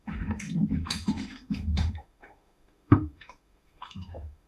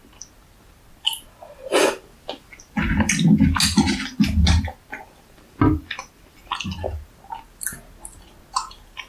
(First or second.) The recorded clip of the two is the second